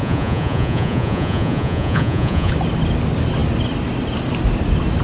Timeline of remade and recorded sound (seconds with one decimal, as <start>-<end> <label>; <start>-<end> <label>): 0.0-2.5 remade; 2.5-5.0 recorded